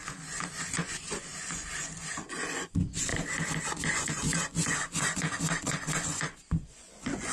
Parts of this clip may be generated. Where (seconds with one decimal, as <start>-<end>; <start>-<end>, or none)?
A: 0.0-3.1; 3.7-7.3